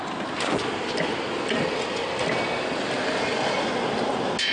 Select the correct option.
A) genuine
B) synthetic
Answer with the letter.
A